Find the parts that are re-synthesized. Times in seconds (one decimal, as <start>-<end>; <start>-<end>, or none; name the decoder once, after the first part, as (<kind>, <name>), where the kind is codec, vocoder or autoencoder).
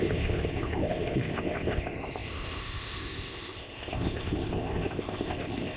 0.0-5.8 (codec, ZipCodec)